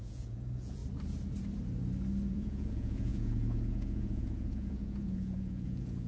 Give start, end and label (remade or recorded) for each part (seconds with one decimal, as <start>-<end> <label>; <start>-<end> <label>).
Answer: 0.0-0.8 remade; 0.8-2.3 recorded; 2.3-6.1 remade